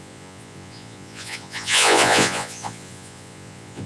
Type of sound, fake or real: fake